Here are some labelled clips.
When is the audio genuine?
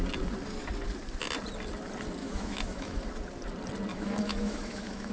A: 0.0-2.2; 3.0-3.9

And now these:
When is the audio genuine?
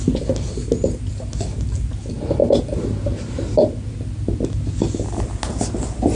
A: 0.0-6.1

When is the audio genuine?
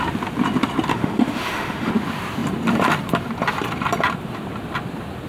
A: 0.0-0.9; 1.9-5.3